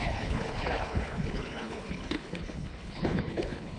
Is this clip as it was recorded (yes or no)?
no